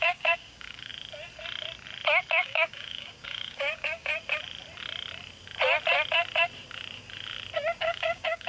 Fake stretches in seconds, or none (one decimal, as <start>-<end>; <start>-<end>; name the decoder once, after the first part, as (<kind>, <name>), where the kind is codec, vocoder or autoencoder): 0.0-0.9 (codec, DAC); 2.3-4.1; 7.8-8.5